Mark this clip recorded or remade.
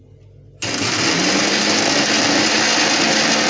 recorded